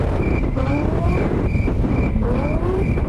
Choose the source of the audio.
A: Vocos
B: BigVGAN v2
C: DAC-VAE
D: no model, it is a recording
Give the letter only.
D